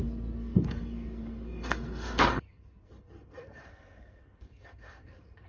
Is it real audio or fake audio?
fake